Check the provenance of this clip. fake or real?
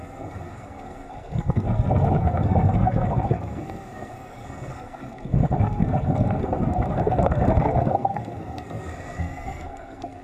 fake